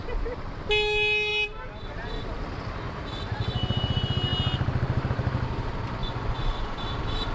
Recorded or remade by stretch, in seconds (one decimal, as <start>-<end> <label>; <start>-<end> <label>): 0.0-6.0 recorded; 6.0-6.8 remade; 6.8-7.3 recorded